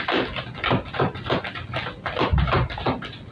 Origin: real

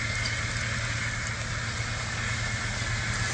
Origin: real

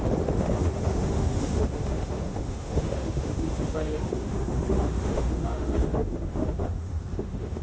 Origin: fake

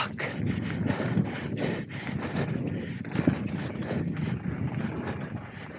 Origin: real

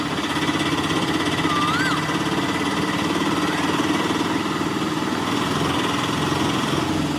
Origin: real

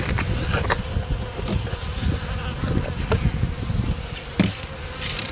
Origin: real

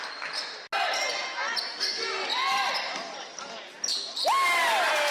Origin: real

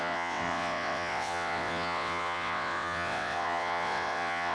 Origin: fake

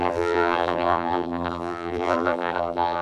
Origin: fake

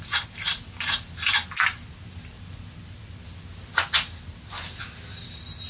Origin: real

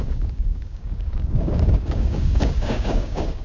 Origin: fake